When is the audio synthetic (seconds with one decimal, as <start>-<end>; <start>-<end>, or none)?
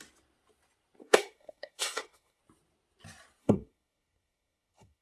1.0-2.4; 3.4-5.0